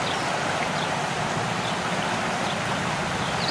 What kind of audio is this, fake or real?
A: real